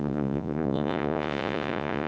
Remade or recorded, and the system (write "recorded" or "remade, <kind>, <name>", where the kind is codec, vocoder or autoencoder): remade, vocoder, Vocos